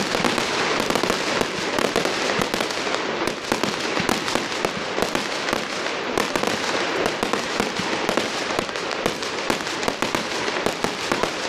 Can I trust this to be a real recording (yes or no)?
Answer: yes